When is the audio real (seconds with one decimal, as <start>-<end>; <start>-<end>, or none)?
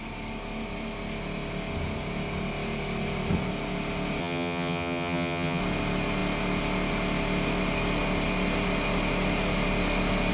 0.0-4.2; 5.6-10.3